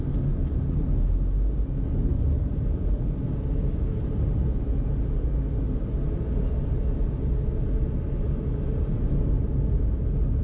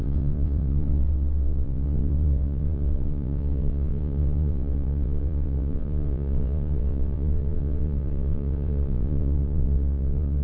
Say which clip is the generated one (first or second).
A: second